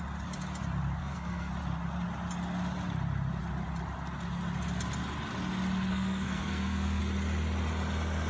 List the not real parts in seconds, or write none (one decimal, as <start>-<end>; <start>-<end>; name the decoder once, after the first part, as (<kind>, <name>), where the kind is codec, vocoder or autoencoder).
1.0-1.5 (codec, SNAC); 5.9-7.0